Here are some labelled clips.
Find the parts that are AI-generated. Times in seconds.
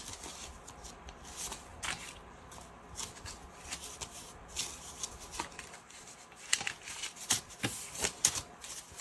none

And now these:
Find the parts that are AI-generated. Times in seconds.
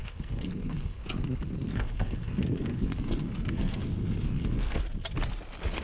0.0-1.0; 1.7-4.8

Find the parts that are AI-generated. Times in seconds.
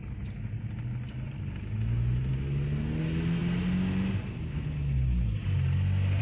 none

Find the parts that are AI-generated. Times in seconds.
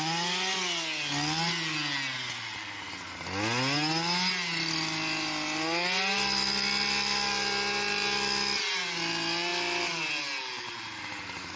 none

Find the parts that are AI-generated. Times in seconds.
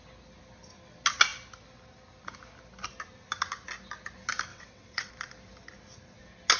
4.5-5.1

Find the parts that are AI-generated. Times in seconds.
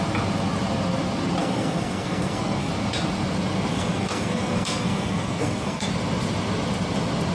1.4-2.7; 3.7-5.9